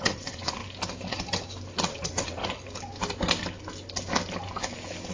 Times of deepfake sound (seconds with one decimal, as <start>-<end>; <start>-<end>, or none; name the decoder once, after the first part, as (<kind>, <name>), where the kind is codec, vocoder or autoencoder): 0.0-0.6 (vocoder, WaveNeXt); 1.8-2.4

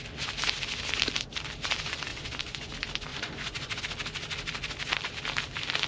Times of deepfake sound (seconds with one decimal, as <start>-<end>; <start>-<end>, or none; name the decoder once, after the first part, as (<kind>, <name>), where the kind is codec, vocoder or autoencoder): 2.1-2.7 (vocoder, Vocos); 3.1-3.8

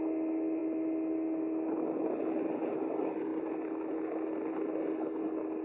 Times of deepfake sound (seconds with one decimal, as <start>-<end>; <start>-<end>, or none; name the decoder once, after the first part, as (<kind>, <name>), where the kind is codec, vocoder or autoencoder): none

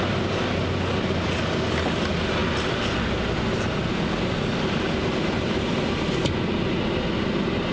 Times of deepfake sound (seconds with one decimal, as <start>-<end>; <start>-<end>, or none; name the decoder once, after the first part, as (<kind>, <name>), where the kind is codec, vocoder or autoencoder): none

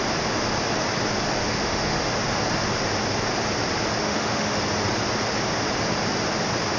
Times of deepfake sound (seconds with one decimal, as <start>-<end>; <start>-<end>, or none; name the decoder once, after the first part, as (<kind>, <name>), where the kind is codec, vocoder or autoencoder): 1.4-2.1 (autoencoder, DAC-VAE); 4.0-4.6

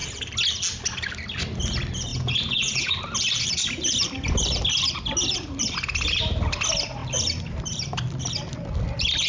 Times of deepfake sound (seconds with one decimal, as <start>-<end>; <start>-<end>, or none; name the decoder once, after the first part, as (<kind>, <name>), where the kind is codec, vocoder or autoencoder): 2.1-2.9 (vocoder, Vocos)